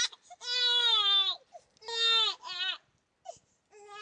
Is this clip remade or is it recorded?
recorded